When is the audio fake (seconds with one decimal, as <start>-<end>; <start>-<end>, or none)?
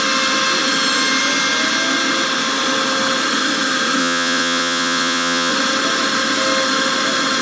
4.0-5.5